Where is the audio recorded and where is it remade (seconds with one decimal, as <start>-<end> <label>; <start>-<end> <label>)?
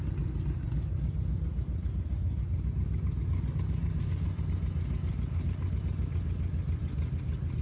0.0-7.6 recorded